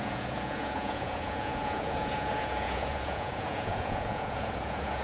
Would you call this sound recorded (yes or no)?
no